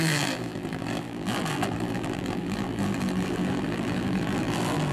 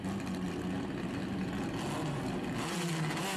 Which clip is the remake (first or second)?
first